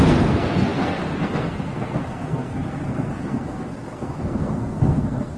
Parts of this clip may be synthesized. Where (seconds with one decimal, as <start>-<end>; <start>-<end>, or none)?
0.0-5.4